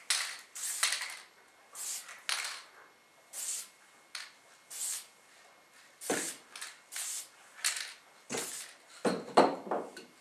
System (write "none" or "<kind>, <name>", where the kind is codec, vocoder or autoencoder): none